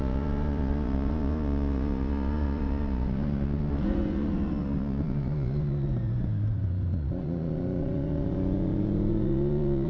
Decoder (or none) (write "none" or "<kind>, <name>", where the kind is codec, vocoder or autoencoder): vocoder, Vocos